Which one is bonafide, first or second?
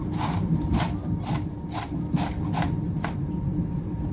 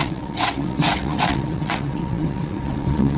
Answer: first